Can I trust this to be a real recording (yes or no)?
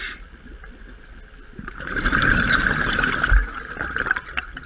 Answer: yes